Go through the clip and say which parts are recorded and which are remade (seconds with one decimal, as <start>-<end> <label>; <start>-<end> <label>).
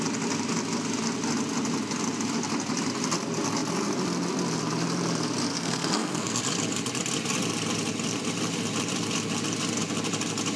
0.0-5.5 recorded; 5.5-6.4 remade; 6.4-10.6 recorded